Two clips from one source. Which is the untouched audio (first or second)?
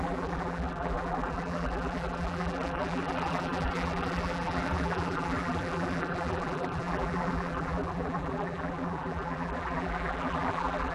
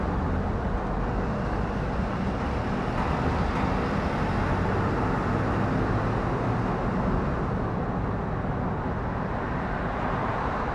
second